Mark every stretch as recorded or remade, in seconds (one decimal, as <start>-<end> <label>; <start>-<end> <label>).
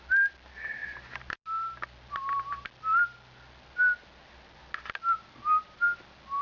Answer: 0.0-6.4 recorded